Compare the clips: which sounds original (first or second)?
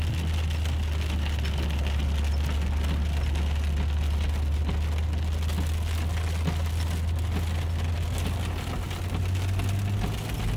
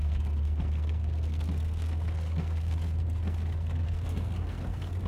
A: first